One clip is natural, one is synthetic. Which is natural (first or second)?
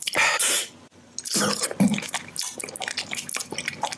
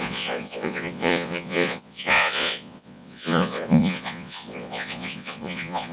first